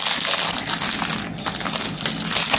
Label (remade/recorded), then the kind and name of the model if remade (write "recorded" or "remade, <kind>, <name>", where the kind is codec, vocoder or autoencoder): recorded